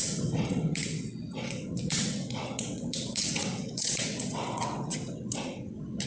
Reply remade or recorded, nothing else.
remade